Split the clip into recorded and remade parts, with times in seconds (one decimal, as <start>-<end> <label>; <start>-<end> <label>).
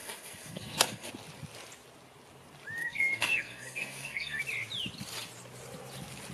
0.0-1.1 remade; 1.1-2.8 recorded; 2.8-4.4 remade; 4.4-6.3 recorded